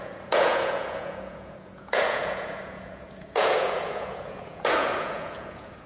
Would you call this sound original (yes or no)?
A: no